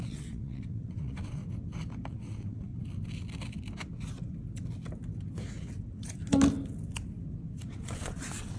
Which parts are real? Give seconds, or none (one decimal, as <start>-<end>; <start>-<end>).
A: 1.4-2.1; 2.7-7.7